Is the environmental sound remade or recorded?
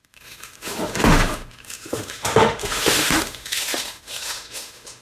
remade